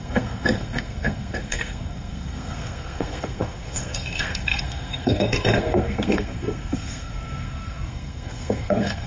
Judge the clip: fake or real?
fake